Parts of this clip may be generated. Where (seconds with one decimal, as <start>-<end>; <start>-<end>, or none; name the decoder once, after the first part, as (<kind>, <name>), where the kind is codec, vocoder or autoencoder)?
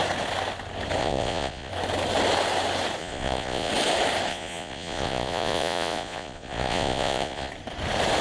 1.0-1.7 (vocoder, Vocos); 3.0-3.7; 4.3-7.5